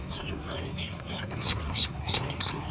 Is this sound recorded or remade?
remade